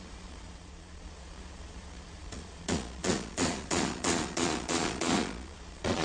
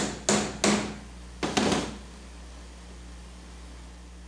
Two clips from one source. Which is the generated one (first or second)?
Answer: first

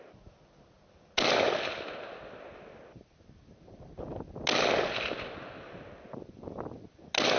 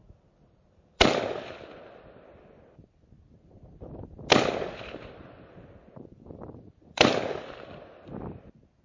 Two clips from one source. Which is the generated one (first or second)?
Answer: second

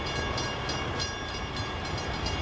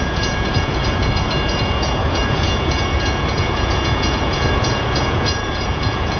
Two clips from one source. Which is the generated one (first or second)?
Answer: second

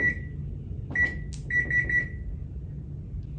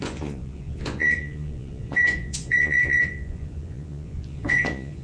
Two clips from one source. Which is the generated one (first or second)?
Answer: second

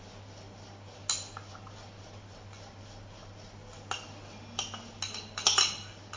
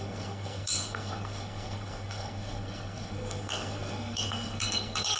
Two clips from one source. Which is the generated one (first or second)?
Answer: second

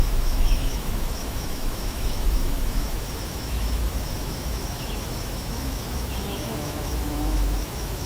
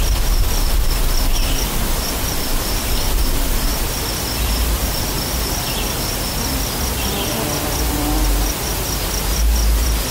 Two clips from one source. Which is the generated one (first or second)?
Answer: first